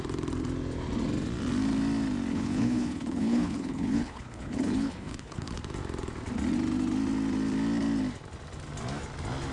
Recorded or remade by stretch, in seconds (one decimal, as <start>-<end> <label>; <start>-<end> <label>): 0.0-2.3 recorded; 2.3-5.5 remade; 5.5-9.5 recorded